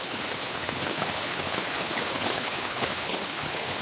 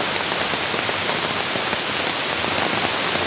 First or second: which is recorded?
second